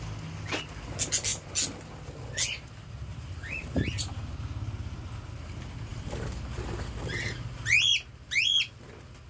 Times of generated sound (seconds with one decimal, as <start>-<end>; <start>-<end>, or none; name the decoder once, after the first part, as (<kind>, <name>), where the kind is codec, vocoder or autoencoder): 3.1-4.3 (vocoder, BigVGAN v2); 5.9-7.9